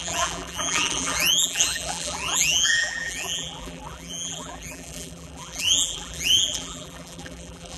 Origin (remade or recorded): remade